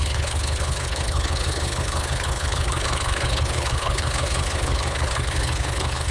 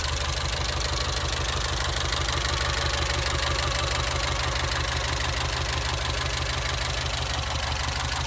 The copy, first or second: first